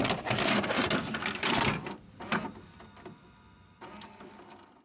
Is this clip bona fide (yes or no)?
yes